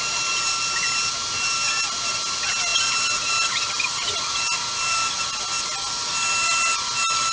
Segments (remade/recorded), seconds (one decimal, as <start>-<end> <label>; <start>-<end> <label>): 0.0-7.3 recorded